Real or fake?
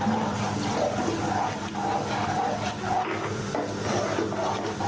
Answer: real